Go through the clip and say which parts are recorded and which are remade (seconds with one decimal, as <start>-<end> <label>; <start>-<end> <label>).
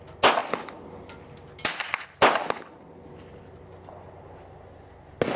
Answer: 0.0-5.4 recorded